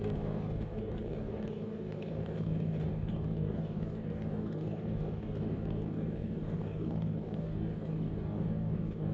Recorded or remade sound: remade